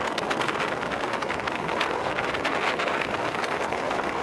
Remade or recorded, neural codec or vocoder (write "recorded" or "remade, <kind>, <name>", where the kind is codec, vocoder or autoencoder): remade, codec, SNAC